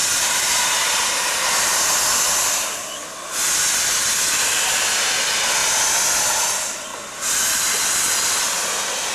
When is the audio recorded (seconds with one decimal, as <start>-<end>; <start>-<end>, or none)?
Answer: 0.5-3.8; 5.6-6.2; 6.9-7.5